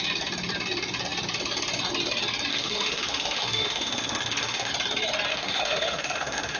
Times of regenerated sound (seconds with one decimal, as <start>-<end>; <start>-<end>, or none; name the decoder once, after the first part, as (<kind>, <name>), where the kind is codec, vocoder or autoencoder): 2.5-4.7 (autoencoder, DAC-VAE); 5.3-6.6